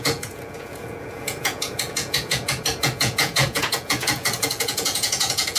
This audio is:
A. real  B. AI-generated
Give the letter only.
B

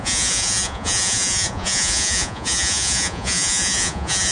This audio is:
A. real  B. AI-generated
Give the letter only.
B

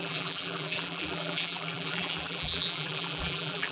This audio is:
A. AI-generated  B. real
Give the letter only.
A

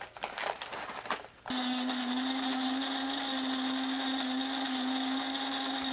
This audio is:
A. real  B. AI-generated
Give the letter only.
A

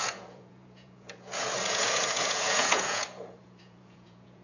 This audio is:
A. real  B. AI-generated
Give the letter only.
B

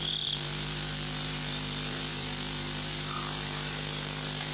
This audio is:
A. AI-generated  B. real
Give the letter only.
A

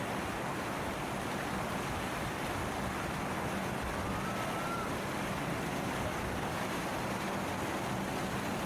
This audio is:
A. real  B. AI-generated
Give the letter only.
A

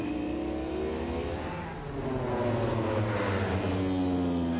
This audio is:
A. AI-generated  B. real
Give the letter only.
B